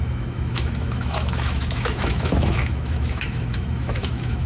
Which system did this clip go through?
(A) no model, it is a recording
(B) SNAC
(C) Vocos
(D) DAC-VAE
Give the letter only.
D